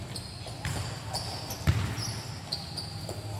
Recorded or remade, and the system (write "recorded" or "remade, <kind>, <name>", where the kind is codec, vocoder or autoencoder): recorded